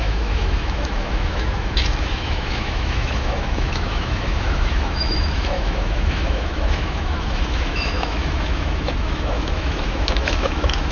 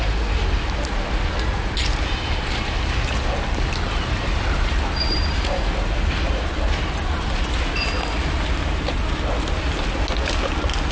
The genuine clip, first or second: second